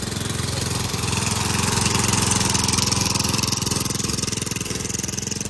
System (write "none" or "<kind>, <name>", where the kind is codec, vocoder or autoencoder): none